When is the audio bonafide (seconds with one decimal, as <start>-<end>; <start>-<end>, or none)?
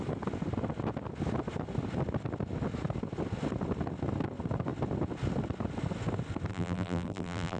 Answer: 0.0-6.5